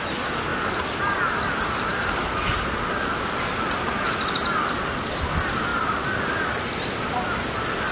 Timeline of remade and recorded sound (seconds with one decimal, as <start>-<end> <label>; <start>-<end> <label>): 0.0-7.9 recorded